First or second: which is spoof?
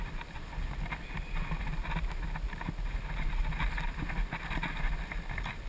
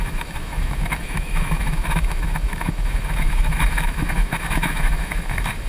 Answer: second